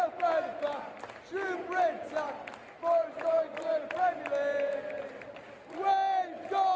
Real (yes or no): yes